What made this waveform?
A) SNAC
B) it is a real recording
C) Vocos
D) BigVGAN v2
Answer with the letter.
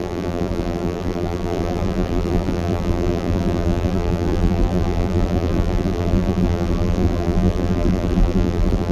D